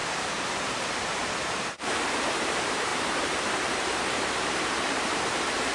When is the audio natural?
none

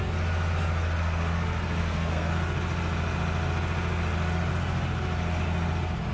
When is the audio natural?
0.0-1.8; 2.3-6.1

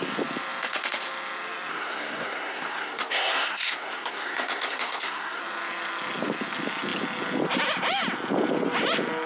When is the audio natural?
0.0-1.7; 5.4-9.3

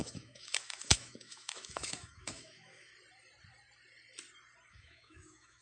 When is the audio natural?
2.9-4.7

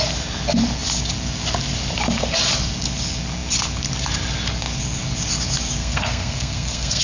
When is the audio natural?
0.0-5.8

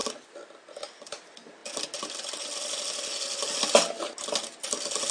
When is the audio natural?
0.0-5.1